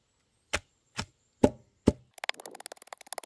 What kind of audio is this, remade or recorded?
recorded